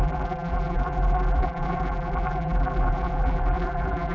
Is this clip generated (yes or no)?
yes